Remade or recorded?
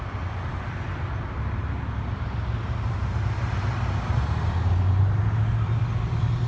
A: recorded